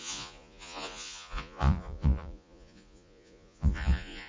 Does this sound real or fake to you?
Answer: fake